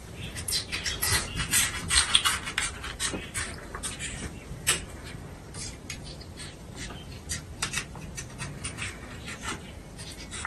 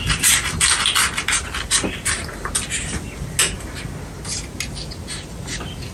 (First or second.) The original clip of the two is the second